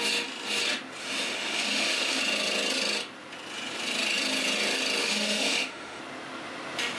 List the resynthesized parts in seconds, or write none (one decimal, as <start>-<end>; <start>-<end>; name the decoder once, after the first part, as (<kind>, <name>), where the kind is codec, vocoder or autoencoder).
1.0-2.2 (autoencoder, DAC-VAE); 5.0-6.0